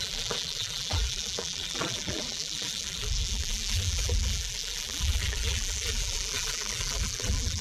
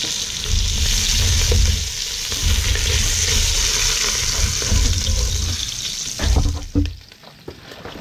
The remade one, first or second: first